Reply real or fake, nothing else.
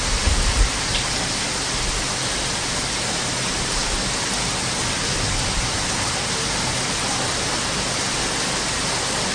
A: real